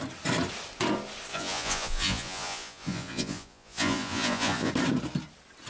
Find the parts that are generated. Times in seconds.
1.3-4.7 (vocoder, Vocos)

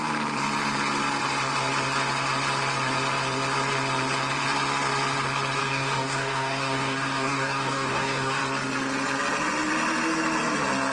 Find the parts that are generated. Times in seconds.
5.6-8.4 (codec, DAC)

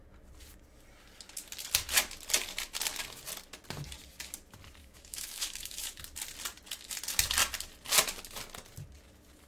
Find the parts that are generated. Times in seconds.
4.8-6.0 (autoencoder, DAC-VAE)

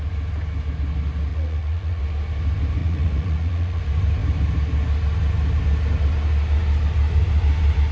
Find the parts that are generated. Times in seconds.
1.3-2.0 (vocoder, Vocos); 2.8-3.8

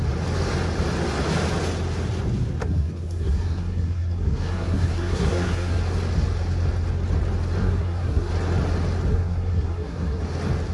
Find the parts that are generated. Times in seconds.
2.6-5.8 (codec, SNAC); 7.6-8.3; 9.1-10.2

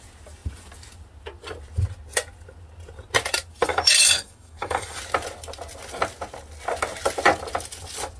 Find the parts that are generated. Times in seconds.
3.7-5.0 (codec, DAC)

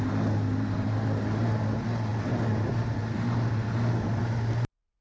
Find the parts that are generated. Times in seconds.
none